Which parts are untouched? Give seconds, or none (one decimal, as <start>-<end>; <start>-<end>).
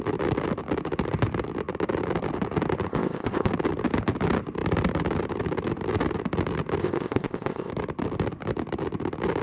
0.0-2.9; 3.5-6.8; 7.7-9.4